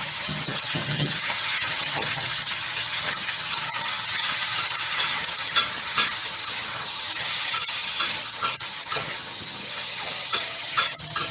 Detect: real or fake fake